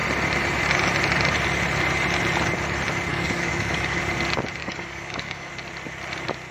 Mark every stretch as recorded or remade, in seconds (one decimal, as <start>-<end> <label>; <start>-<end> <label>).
0.0-3.1 recorded; 3.1-4.0 remade; 4.0-4.6 recorded; 4.6-5.5 remade; 5.5-6.5 recorded